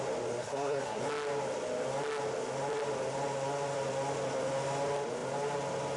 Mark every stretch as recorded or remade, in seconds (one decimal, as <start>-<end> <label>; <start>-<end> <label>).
0.0-0.4 recorded; 0.4-1.0 remade; 1.0-6.0 recorded